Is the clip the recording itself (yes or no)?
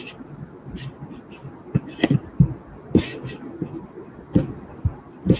yes